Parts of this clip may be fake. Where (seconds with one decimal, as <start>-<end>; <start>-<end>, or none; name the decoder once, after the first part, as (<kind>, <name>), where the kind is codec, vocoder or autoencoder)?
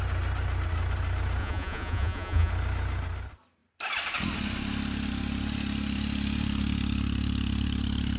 1.4-2.5 (vocoder, Vocos)